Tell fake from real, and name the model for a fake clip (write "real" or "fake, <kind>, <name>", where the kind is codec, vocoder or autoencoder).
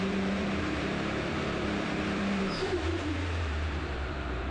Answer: fake, vocoder, BigVGAN v2